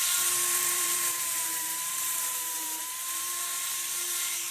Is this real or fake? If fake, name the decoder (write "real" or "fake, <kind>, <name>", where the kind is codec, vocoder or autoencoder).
fake, vocoder, BigVGAN v2